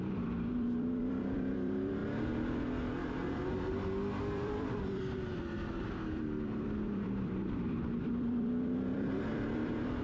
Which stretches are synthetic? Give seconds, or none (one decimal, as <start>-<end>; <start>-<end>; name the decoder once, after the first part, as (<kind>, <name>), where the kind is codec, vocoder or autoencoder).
0.0-2.0 (vocoder, BigVGAN v2); 4.2-10.0